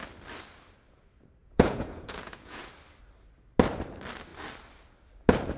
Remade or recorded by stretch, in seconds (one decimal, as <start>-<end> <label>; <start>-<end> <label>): 0.0-1.4 recorded; 1.4-2.7 remade; 2.7-5.6 recorded